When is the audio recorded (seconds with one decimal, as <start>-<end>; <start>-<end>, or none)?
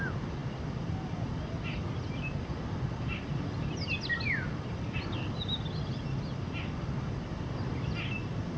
0.0-8.6